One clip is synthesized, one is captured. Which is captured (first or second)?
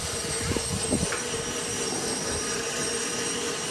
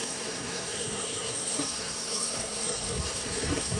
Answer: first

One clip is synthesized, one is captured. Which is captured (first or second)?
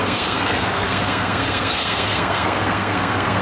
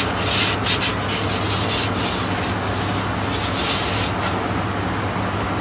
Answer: second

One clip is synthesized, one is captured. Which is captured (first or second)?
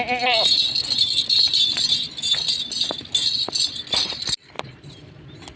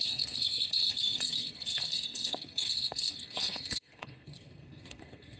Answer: first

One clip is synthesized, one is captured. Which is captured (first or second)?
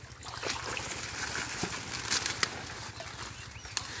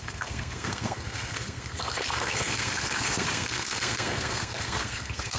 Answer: first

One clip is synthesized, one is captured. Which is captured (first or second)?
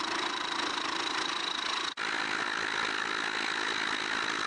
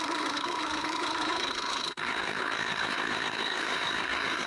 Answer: first